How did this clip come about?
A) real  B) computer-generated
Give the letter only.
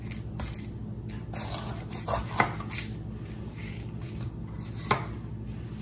A